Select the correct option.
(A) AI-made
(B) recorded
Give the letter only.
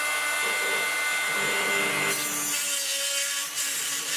B